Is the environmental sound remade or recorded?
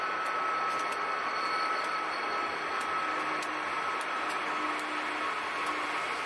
recorded